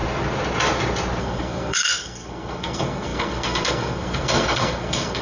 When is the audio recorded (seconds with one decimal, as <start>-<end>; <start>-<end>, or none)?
0.0-1.2